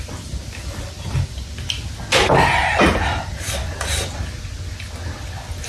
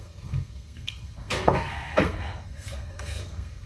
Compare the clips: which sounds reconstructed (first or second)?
second